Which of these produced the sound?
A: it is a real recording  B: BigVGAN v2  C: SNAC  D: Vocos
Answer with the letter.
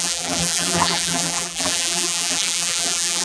B